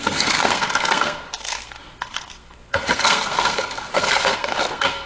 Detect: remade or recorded remade